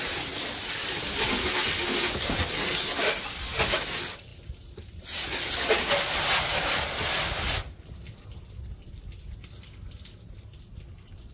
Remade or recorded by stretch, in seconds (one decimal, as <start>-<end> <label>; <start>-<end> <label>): 0.0-11.3 recorded